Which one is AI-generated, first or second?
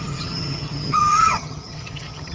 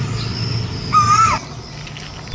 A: first